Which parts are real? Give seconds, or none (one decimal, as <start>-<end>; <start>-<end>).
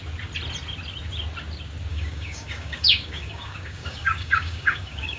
0.0-1.9